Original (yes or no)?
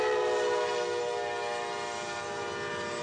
yes